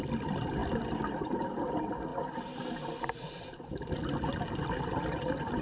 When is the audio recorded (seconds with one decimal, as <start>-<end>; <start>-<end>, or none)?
0.0-5.6